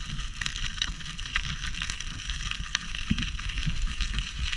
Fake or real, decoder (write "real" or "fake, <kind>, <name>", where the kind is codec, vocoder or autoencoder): fake, codec, SNAC